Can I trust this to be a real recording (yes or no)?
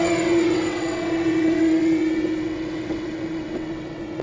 no